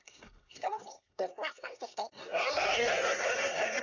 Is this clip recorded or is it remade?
remade